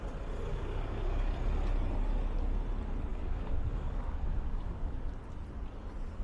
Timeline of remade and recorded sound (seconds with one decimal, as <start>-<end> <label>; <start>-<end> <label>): 0.0-0.5 recorded; 0.5-1.3 remade; 1.3-3.1 recorded; 3.1-5.0 remade; 5.0-6.2 recorded